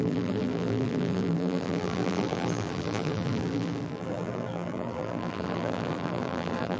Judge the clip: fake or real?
fake